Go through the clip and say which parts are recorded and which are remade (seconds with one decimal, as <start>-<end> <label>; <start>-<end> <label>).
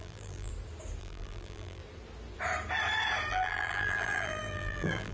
0.0-0.5 remade; 0.5-1.0 recorded; 1.0-1.8 remade; 1.8-3.3 recorded; 3.3-5.1 remade